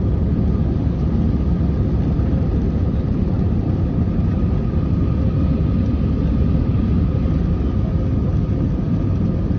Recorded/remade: recorded